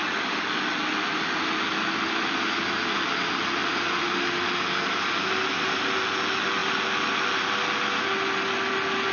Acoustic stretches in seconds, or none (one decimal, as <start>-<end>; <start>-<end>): 0.0-9.1